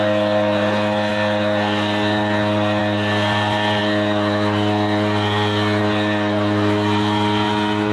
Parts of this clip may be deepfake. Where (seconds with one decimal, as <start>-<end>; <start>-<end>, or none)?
none